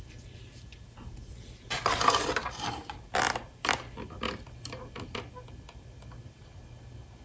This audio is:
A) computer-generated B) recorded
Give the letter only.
B